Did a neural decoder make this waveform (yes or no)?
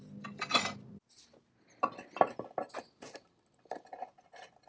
no